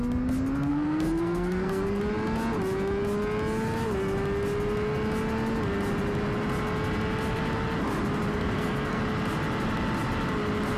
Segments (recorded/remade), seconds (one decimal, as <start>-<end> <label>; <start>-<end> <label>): 0.0-0.7 recorded; 0.7-2.0 remade; 2.0-8.3 recorded; 8.3-9.0 remade; 9.0-10.8 recorded